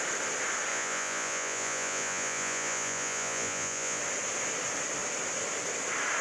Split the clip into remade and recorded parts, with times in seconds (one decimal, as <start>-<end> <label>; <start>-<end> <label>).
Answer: 0.0-0.7 recorded; 0.7-4.0 remade; 4.0-6.2 recorded